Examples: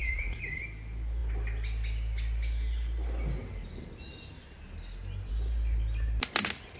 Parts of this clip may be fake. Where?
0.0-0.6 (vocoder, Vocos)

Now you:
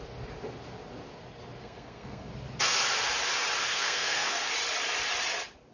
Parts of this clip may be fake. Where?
1.6-2.3 (codec, SNAC); 3.7-4.5

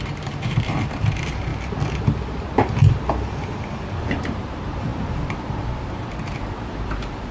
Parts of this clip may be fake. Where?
0.0-1.5 (vocoder, BigVGAN v2); 4.2-7.3

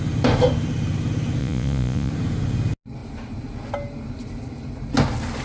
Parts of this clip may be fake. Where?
1.4-2.1 (vocoder, Vocos)

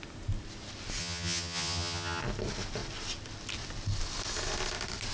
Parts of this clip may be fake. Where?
1.0-2.2 (vocoder, HiFi-GAN)

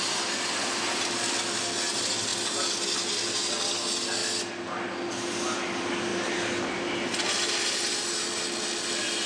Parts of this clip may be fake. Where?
none

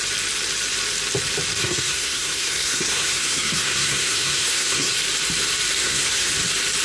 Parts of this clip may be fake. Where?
1.6-4.9 (codec, SNAC); 5.8-6.3

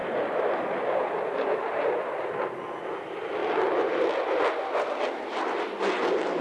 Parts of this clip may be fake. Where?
0.0-2.3 (vocoder, BigVGAN v2); 3.4-6.4